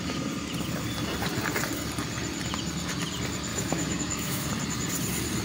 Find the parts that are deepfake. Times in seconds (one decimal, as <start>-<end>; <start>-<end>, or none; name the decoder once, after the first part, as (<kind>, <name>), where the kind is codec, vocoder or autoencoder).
3.5-4.5 (autoencoder, DAC-VAE)